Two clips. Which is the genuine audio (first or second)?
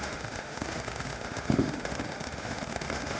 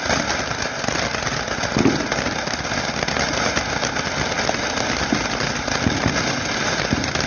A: second